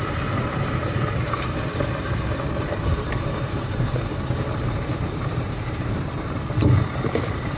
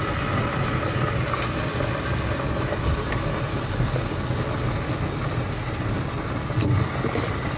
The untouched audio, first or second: second